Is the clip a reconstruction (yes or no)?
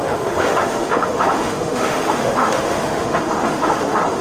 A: yes